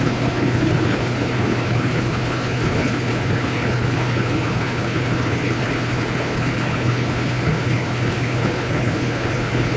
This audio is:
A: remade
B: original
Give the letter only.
A